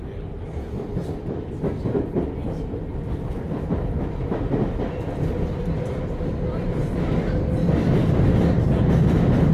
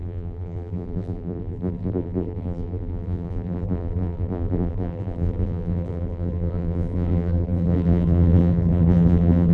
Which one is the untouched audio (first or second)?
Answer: first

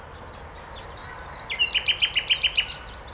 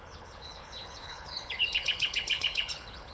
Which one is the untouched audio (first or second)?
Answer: first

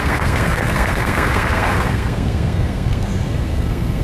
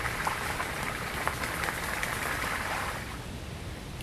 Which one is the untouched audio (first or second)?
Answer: second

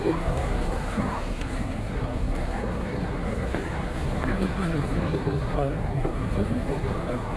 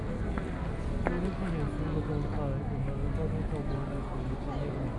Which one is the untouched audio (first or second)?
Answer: second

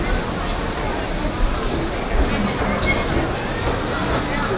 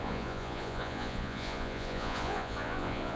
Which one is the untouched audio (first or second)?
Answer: first